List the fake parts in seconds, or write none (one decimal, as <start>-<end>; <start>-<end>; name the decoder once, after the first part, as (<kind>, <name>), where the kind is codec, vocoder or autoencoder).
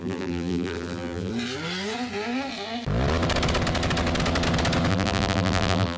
0.0-1.3 (vocoder, BigVGAN v2); 4.9-6.0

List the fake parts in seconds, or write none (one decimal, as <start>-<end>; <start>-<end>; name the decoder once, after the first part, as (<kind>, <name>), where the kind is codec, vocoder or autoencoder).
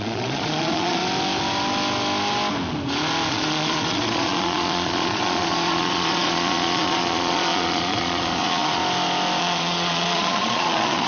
0.0-1.0 (vocoder, Vocos); 3.3-8.8; 9.4-11.1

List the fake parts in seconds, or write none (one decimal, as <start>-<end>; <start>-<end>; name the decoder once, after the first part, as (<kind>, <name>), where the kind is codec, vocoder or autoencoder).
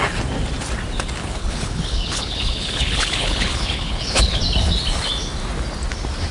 1.2-4.4 (codec, HILCodec)